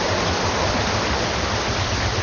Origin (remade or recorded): recorded